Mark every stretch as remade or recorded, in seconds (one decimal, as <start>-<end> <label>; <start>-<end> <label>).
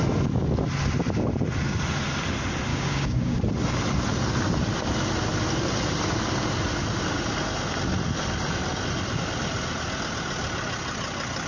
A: 0.0-2.7 recorded; 2.7-3.4 remade; 3.4-11.5 recorded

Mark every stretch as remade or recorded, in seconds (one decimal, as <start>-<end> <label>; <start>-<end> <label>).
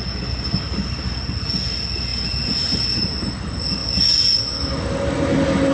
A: 0.0-2.1 recorded; 2.1-3.3 remade; 3.3-5.7 recorded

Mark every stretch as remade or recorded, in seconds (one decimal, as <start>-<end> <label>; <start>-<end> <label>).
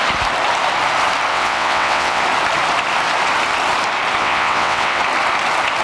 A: 0.0-1.3 recorded; 1.3-2.2 remade; 2.2-4.2 recorded; 4.2-5.0 remade; 5.0-5.8 recorded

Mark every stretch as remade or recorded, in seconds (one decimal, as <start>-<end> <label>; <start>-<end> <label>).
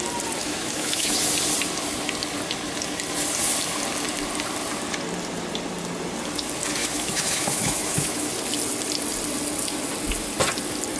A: 0.0-0.4 recorded; 0.4-1.2 remade; 1.2-6.8 recorded; 6.8-8.3 remade; 8.3-11.0 recorded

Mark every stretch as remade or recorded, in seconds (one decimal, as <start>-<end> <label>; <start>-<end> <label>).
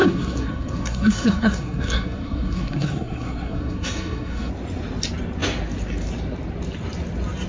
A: 0.0-4.5 remade; 4.5-7.5 recorded